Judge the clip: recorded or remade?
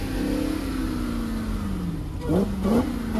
recorded